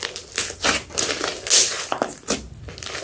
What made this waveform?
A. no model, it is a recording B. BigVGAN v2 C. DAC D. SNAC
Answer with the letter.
A